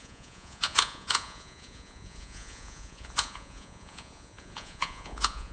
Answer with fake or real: fake